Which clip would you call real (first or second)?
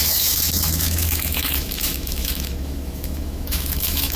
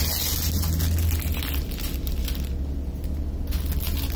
second